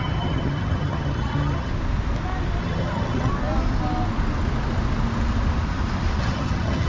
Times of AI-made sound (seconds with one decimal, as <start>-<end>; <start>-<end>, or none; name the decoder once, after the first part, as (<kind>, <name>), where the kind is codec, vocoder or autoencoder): 0.0-1.7 (vocoder, HiFi-GAN); 2.6-3.3; 6.2-6.9